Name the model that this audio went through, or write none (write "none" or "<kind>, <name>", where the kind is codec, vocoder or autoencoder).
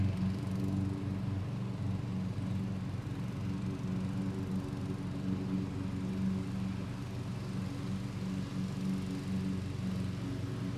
none